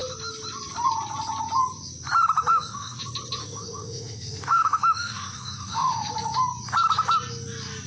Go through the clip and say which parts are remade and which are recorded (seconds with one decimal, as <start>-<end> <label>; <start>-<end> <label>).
0.0-2.5 recorded; 2.5-3.0 remade; 3.0-3.4 recorded; 3.4-6.1 remade; 6.1-7.9 recorded